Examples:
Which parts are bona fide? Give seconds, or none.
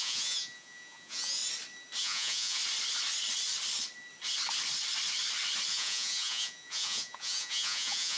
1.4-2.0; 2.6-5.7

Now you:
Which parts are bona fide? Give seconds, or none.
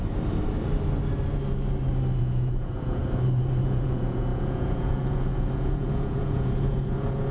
0.0-2.2; 3.0-3.6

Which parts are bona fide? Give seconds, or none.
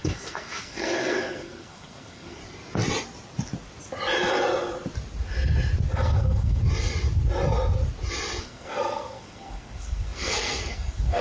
2.4-5.9; 6.6-8.4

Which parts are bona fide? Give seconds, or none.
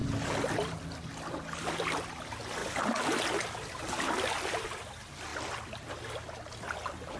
0.0-7.2